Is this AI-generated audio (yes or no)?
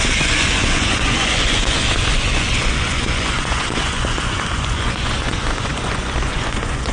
yes